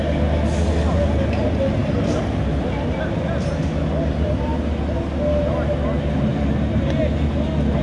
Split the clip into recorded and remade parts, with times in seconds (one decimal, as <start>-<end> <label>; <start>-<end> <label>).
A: 0.0-7.8 recorded